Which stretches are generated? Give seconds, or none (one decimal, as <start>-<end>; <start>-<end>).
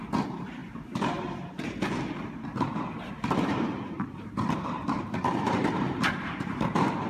0.0-7.1